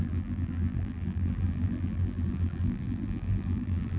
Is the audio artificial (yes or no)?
yes